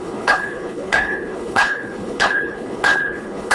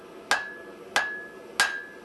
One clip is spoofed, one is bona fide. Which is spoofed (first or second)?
first